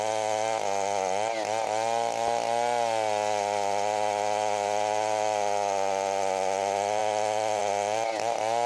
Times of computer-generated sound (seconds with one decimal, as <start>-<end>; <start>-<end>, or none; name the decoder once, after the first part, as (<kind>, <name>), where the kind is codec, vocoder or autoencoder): none